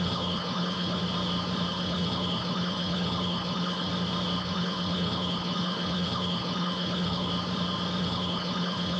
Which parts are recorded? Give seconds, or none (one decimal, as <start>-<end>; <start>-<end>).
1.0-1.7; 3.9-4.4; 7.3-8.0

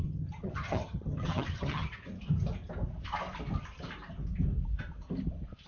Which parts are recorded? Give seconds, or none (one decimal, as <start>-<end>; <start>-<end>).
2.0-5.7

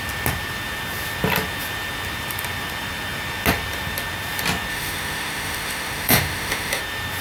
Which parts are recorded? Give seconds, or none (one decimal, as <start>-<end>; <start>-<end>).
0.0-4.7; 6.8-7.2

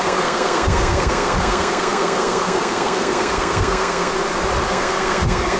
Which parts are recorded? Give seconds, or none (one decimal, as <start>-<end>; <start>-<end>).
4.1-4.7

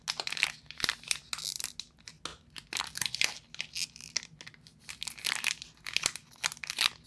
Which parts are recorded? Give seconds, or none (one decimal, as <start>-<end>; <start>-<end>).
0.0-7.1

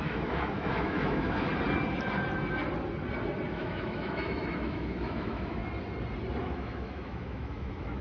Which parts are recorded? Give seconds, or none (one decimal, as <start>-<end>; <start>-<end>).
1.5-3.5; 5.6-6.4

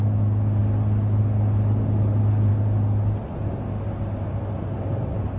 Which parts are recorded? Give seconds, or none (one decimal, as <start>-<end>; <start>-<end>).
0.0-5.4

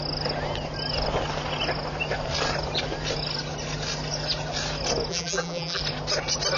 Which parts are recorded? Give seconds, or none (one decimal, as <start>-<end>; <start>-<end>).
0.0-5.1; 5.8-6.6